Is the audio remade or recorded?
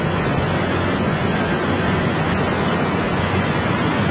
remade